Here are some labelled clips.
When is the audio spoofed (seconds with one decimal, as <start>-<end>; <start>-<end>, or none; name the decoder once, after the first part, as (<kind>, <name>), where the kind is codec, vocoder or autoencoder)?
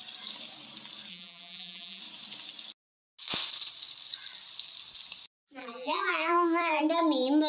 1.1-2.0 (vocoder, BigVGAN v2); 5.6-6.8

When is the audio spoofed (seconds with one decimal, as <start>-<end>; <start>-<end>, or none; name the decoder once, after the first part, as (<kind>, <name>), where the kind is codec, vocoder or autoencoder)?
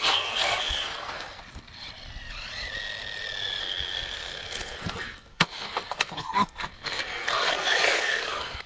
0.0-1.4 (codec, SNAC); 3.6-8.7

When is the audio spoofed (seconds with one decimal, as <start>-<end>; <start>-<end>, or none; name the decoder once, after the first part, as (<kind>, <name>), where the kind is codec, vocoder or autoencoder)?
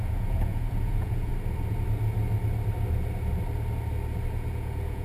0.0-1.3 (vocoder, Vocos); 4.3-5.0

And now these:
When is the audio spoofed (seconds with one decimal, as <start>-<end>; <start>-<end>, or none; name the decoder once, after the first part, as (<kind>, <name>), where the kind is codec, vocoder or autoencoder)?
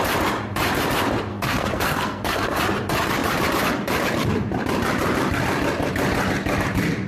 1.3-2.6 (codec, SNAC)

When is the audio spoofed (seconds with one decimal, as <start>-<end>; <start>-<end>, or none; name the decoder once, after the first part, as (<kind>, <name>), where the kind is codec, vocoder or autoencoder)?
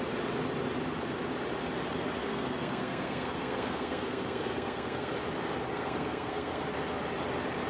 2.2-5.1 (codec, SNAC); 5.7-6.6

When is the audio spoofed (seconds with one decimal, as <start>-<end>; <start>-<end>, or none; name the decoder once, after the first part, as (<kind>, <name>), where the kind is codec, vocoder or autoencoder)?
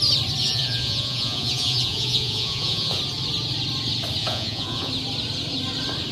0.4-3.0 (vocoder, Vocos); 4.2-4.9